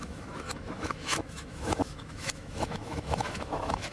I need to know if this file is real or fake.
fake